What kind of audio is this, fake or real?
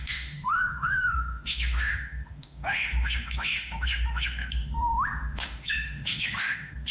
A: fake